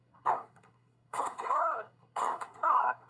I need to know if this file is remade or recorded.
remade